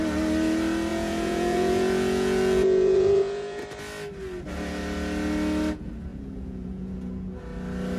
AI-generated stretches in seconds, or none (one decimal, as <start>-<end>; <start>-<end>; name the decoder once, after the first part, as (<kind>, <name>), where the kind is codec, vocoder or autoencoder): 0.9-3.6 (vocoder, Vocos); 6.1-7.4